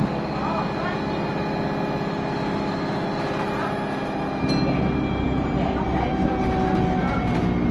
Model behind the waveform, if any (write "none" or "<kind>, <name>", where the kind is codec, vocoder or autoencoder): none